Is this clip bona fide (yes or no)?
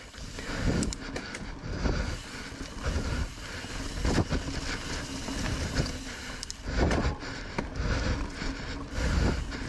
yes